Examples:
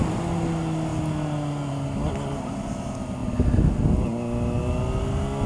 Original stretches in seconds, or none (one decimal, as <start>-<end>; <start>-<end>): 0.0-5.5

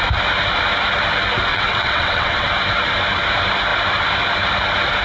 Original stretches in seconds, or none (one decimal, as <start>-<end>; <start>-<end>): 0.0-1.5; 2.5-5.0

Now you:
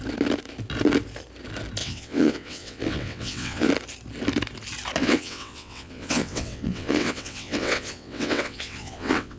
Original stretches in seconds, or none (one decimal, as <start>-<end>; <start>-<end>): 0.0-1.8; 3.7-5.0